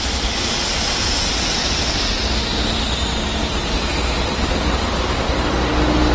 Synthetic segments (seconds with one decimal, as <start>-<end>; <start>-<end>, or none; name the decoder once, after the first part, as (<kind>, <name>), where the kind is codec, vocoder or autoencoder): 2.5-4.5 (vocoder, BigVGAN v2)